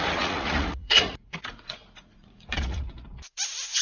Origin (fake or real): fake